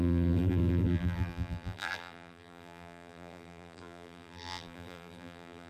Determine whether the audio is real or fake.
fake